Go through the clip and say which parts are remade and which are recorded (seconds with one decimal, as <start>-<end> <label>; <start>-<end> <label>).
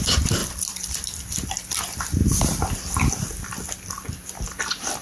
0.0-5.0 remade